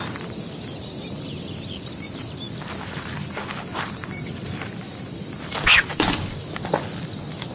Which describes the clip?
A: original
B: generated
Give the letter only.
B